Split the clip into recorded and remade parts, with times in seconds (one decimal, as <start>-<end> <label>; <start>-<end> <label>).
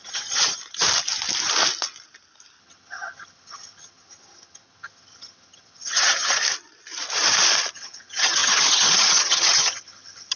0.0-0.6 remade; 0.6-2.6 recorded; 2.6-6.4 remade; 6.4-7.7 recorded; 7.7-10.4 remade